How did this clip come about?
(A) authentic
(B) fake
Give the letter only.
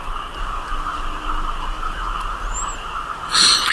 A